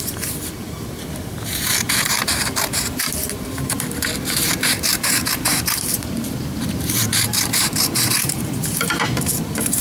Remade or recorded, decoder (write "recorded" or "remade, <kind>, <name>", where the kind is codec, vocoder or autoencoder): remade, vocoder, BigVGAN v2